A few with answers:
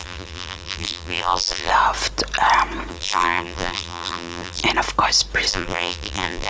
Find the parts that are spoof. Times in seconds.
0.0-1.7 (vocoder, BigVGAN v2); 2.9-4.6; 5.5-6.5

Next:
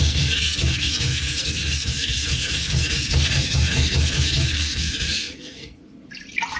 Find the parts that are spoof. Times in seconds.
0.0-5.8 (codec, SNAC)

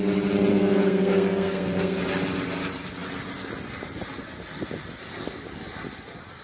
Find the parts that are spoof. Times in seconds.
0.5-2.0 (codec, SNAC)

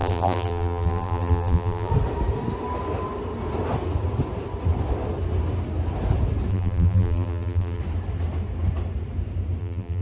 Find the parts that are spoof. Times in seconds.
0.0-1.9 (vocoder, BigVGAN v2); 6.5-7.8; 9.6-10.0

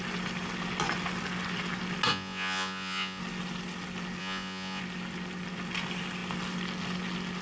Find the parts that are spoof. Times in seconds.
2.1-3.2 (vocoder, Vocos); 4.2-4.8

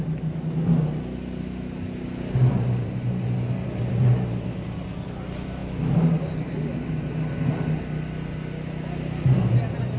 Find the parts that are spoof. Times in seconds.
none